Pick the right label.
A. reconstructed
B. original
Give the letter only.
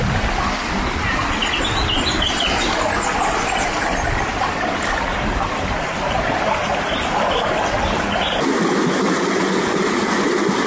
B